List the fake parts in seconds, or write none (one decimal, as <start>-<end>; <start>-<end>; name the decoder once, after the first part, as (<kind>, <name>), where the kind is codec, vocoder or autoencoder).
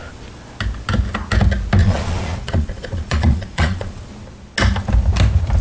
1.8-4.1 (vocoder, Vocos)